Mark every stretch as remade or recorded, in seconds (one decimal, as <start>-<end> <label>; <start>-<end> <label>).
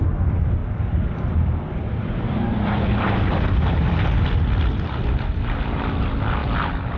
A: 0.0-0.6 recorded; 0.6-4.3 remade; 4.3-6.4 recorded; 6.4-7.0 remade